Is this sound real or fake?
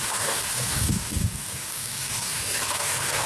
fake